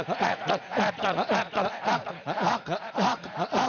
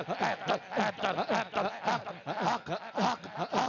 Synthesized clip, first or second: first